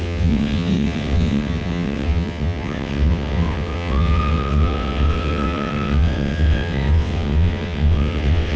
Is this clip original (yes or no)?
no